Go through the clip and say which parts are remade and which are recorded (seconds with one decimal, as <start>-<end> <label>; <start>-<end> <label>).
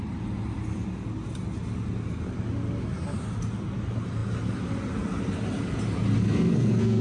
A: 0.0-6.2 recorded; 6.2-7.0 remade